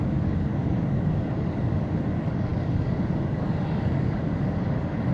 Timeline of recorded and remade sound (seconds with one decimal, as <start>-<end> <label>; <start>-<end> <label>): 0.0-5.1 remade